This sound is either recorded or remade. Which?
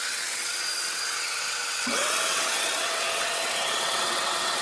remade